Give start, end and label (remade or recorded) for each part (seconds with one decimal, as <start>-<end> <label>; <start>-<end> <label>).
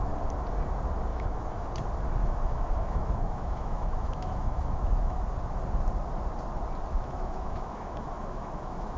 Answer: 0.0-1.1 recorded; 1.1-1.7 remade; 1.7-2.2 recorded; 2.2-5.2 remade; 5.2-6.9 recorded; 6.9-9.0 remade